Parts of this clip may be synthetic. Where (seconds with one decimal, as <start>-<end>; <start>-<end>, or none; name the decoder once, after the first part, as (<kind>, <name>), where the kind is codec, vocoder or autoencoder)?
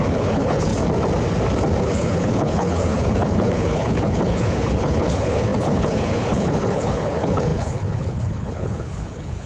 0.0-0.7 (codec, HILCodec); 1.8-9.5